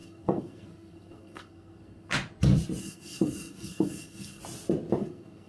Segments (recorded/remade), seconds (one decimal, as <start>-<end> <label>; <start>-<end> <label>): 0.0-2.1 remade; 2.1-2.8 recorded; 2.8-4.4 remade; 4.4-5.0 recorded; 5.0-5.5 remade